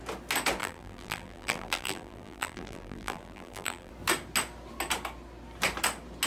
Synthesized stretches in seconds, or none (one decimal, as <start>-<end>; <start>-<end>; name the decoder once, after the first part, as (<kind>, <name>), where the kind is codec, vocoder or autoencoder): 0.6-3.9 (vocoder, BigVGAN v2)